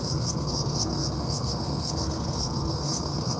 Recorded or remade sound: remade